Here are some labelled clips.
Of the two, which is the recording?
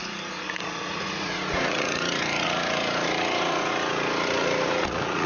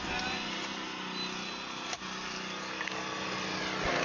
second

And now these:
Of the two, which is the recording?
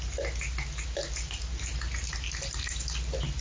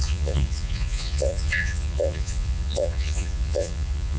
first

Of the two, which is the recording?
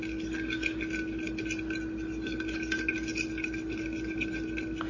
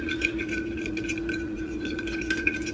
first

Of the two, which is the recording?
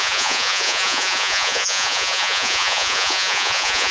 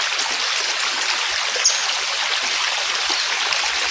second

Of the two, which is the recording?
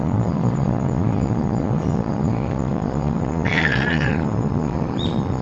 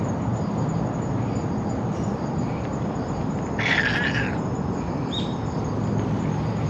second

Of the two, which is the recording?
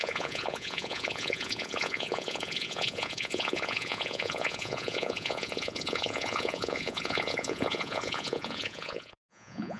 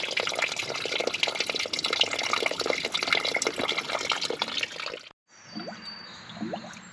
second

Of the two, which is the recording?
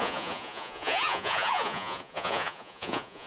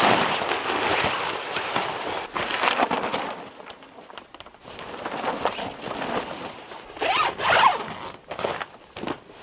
second